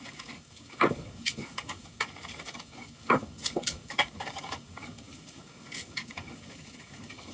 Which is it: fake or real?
fake